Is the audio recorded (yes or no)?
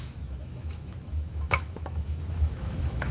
no